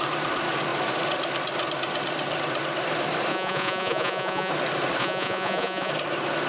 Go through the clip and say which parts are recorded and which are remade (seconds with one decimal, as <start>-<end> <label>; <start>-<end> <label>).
0.0-3.3 recorded; 3.3-4.5 remade; 4.5-5.0 recorded; 5.0-5.9 remade; 5.9-6.5 recorded